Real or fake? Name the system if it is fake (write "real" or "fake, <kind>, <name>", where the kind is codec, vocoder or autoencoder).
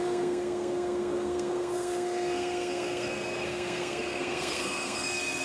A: fake, codec, SNAC